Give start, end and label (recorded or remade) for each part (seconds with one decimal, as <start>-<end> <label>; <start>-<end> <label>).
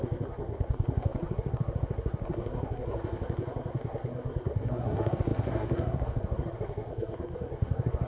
0.0-8.1 remade